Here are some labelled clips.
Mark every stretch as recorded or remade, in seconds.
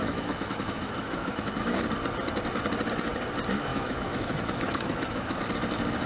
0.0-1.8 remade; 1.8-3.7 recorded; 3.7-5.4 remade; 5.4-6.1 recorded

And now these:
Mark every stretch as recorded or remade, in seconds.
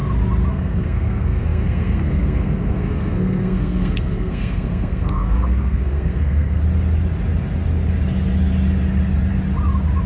0.0-0.5 recorded; 0.5-6.6 remade; 6.6-10.1 recorded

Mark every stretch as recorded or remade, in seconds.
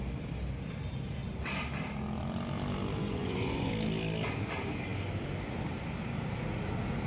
0.0-3.0 recorded; 3.0-3.7 remade; 3.7-7.1 recorded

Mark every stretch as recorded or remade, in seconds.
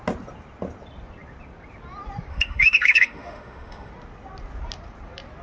0.0-2.3 recorded; 2.3-3.9 remade; 3.9-5.4 recorded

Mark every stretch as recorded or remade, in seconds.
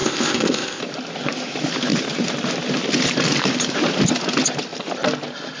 0.0-0.8 remade; 0.8-5.6 recorded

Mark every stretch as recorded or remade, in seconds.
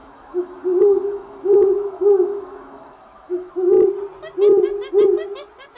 0.0-3.5 remade; 3.5-5.8 recorded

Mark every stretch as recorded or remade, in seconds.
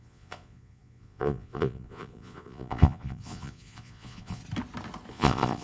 0.0-4.4 remade; 4.4-5.1 recorded; 5.1-5.6 remade